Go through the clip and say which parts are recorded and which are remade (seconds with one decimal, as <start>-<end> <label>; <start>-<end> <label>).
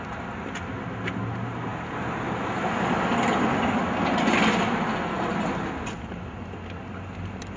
0.0-7.6 recorded